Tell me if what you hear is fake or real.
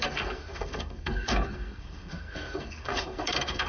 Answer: fake